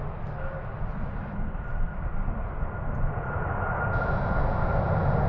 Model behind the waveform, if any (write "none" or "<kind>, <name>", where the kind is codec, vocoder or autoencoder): none